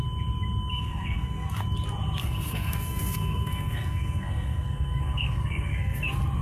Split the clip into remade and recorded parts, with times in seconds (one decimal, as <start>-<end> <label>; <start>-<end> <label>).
0.0-0.7 recorded; 0.7-1.6 remade; 1.6-2.2 recorded; 2.2-6.0 remade; 6.0-6.4 recorded